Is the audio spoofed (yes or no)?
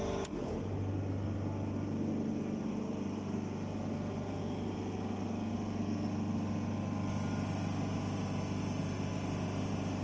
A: no